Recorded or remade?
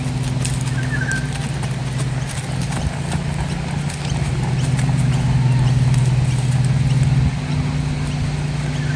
recorded